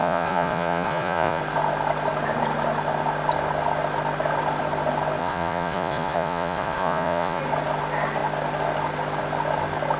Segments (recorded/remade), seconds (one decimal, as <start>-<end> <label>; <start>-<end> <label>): 0.0-1.4 remade; 1.4-5.2 recorded; 5.2-7.4 remade; 7.4-10.0 recorded